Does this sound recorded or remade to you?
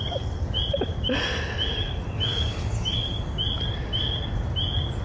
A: recorded